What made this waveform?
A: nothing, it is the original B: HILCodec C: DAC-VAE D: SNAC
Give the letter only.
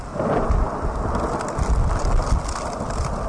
A